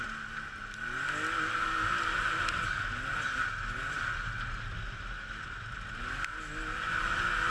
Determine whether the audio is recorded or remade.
recorded